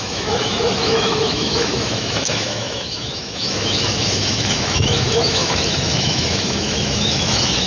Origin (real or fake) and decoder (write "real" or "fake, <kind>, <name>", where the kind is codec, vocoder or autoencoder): fake, autoencoder, DAC-VAE